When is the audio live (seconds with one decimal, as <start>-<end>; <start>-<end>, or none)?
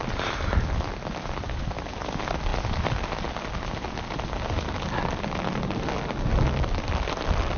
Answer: 0.0-7.6